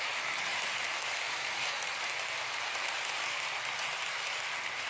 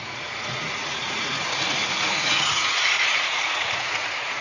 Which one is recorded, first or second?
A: first